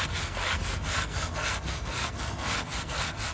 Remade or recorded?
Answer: remade